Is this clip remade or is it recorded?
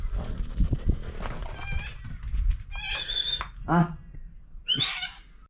recorded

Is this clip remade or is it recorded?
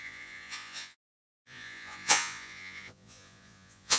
remade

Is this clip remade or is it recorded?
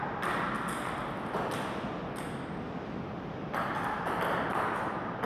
recorded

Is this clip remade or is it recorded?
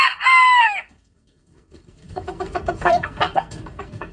remade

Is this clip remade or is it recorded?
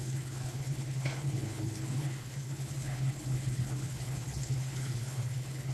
remade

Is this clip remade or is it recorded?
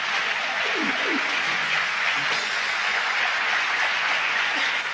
remade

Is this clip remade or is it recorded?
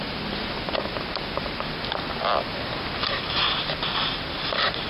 recorded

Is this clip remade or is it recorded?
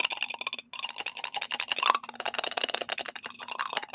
recorded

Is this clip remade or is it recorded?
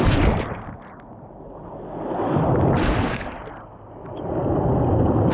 recorded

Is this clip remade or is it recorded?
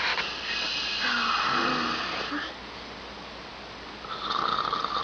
recorded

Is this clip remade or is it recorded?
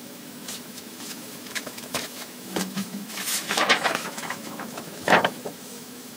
remade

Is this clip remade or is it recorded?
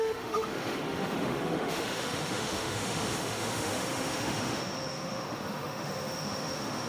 remade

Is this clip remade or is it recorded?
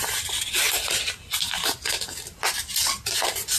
recorded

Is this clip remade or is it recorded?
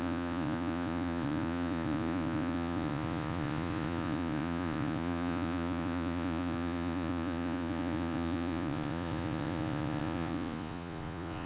remade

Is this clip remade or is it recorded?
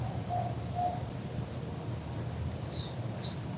recorded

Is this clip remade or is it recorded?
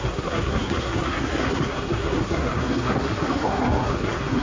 remade